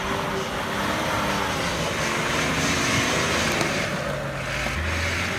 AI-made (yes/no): no